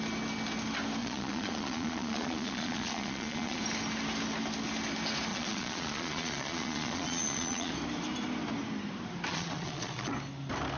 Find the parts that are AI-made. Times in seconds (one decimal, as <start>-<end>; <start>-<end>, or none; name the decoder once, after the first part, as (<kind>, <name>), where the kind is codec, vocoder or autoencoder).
1.0-3.6 (vocoder, Vocos); 5.3-7.7; 9.3-10.1